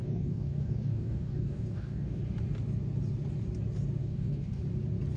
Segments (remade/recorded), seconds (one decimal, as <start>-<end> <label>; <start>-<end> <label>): 0.0-2.2 remade; 2.2-4.0 recorded; 4.0-4.6 remade; 4.6-5.2 recorded